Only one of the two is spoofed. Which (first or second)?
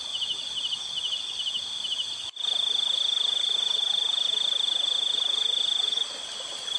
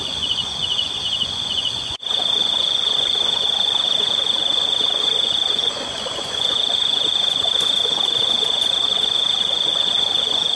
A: second